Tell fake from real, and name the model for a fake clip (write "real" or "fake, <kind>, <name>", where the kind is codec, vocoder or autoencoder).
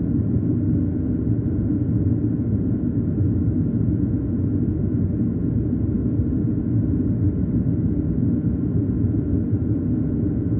real